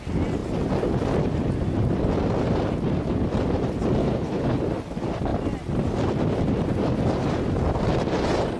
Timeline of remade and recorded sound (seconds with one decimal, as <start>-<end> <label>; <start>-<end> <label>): 0.0-4.0 recorded; 4.0-4.6 remade; 4.6-8.6 recorded